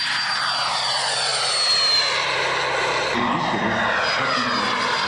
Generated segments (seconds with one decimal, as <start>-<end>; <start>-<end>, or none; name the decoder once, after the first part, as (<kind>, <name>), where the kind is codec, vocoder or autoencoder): none